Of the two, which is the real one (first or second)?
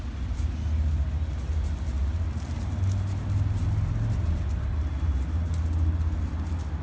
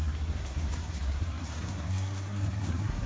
first